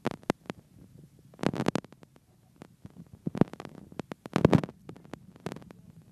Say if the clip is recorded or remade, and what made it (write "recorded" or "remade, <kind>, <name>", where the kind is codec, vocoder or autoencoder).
recorded